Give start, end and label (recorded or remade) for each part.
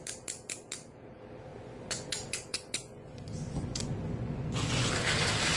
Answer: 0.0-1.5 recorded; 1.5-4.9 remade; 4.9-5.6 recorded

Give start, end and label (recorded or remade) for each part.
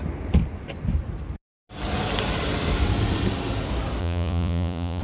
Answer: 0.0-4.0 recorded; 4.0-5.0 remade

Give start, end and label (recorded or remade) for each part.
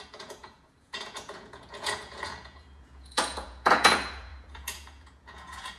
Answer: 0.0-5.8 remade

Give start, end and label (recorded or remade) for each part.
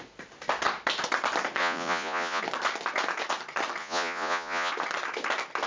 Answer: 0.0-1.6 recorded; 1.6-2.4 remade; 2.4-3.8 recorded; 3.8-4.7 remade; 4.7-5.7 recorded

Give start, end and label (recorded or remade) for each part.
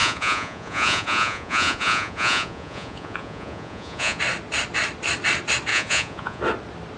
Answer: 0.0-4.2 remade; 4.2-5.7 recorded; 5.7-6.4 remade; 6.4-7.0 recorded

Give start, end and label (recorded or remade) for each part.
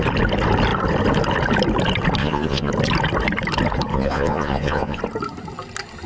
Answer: 0.0-2.2 recorded; 2.2-2.7 remade; 2.7-3.9 recorded; 3.9-5.0 remade; 5.0-6.1 recorded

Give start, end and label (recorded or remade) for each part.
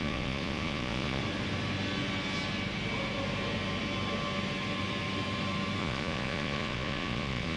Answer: 0.0-1.2 remade; 1.2-5.8 recorded; 5.8-7.6 remade